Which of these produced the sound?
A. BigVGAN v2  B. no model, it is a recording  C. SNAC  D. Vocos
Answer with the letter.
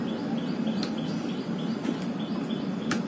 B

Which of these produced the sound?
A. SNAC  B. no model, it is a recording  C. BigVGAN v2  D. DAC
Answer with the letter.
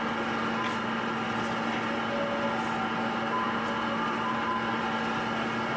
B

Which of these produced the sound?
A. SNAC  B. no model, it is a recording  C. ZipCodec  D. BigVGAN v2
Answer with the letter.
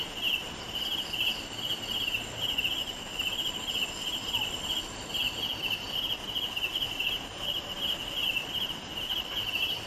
B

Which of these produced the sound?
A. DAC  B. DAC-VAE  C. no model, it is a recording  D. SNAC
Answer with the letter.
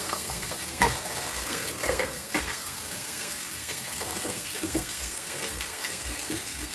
D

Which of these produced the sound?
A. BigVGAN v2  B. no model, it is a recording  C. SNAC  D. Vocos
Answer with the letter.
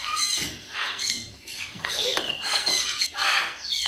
C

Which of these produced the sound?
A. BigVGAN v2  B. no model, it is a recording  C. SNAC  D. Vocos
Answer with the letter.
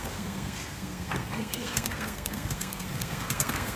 C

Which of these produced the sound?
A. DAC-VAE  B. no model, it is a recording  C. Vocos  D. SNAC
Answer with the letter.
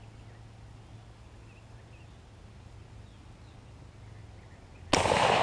B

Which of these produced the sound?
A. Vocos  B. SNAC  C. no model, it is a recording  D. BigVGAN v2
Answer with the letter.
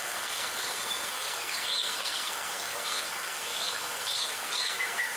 B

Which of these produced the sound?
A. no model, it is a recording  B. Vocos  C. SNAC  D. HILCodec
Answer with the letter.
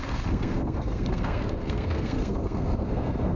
C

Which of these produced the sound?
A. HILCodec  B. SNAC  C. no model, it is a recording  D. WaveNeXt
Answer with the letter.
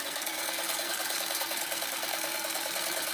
B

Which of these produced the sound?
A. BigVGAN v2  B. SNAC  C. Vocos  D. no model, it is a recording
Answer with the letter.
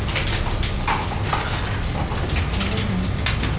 D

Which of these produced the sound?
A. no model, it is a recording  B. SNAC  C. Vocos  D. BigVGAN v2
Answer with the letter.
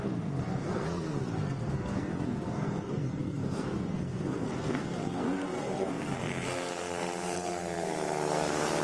B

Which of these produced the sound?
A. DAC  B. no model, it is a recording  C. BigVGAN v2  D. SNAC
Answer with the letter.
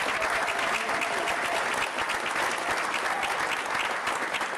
B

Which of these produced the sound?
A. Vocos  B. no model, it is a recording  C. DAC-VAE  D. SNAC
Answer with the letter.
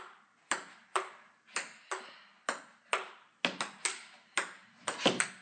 B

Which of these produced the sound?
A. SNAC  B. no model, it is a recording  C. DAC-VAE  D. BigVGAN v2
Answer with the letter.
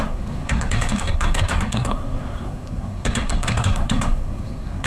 A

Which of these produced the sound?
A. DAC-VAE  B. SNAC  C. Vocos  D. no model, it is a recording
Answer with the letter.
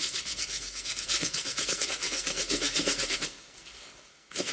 B